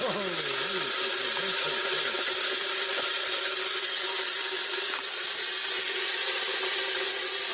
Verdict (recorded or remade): recorded